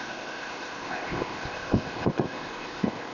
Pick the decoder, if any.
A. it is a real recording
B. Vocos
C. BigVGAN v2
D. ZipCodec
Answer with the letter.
D